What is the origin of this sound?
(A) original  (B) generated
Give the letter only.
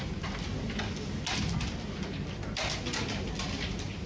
A